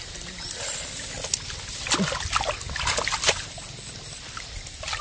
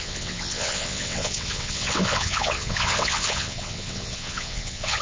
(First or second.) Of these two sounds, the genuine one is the first